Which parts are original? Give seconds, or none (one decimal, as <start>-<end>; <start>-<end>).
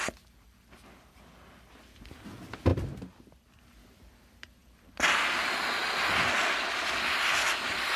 0.0-8.0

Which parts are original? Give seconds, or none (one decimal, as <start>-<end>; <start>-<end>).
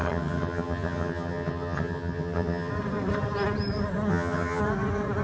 2.7-4.1; 4.6-5.2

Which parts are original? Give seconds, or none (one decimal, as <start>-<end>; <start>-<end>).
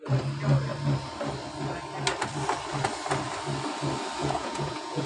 0.0-4.2